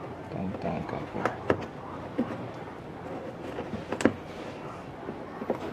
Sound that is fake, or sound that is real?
real